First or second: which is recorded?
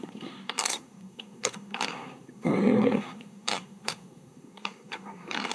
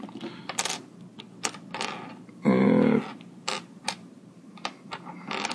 second